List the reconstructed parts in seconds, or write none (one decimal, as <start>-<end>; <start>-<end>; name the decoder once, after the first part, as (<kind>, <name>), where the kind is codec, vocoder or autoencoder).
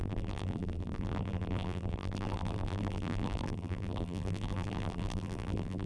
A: 0.0-5.9 (vocoder, BigVGAN v2)